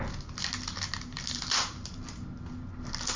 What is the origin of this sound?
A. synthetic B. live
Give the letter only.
B